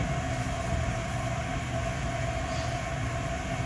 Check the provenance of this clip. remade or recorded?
recorded